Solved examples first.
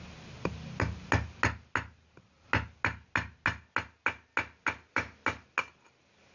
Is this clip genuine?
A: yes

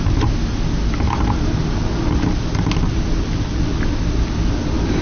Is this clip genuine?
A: yes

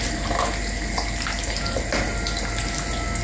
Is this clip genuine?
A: yes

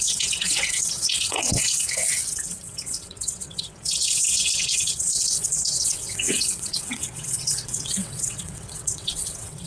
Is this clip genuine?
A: no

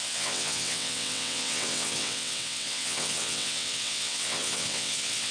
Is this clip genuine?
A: no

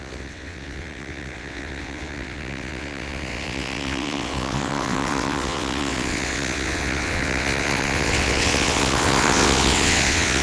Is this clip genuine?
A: no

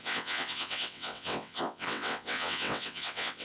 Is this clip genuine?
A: no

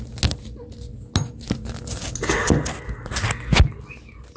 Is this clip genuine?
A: yes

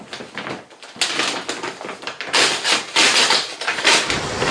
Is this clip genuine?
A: yes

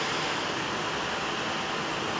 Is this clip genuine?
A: yes